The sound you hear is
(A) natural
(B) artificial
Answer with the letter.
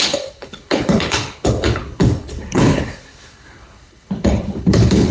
B